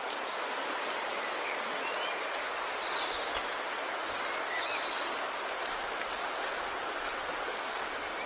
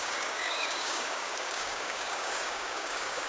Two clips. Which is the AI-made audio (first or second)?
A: second